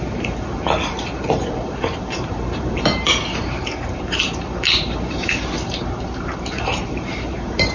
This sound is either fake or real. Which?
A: fake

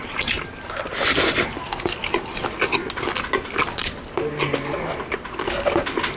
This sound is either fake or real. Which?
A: real